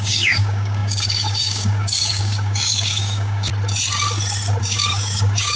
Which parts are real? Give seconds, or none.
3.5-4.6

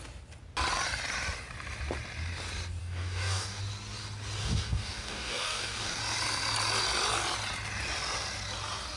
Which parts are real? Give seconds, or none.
0.0-2.8; 3.6-4.4; 6.0-9.0